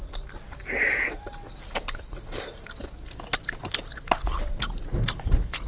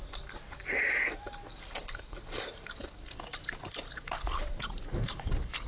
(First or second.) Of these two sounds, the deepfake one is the second